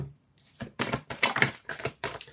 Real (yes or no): no